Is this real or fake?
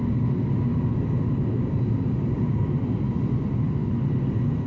real